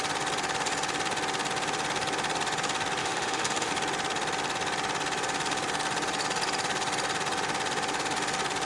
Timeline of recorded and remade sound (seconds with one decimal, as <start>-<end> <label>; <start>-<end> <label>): 0.0-3.0 recorded; 3.0-3.7 remade; 3.7-8.7 recorded

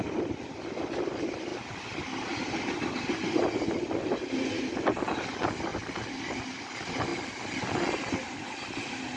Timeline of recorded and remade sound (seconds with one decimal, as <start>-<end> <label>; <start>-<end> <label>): 0.0-9.2 recorded

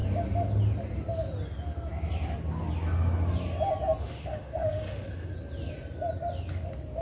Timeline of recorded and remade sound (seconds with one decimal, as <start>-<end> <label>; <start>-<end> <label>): 0.0-4.0 recorded; 4.0-5.3 remade; 5.3-7.0 recorded